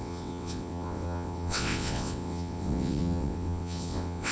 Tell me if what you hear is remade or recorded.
remade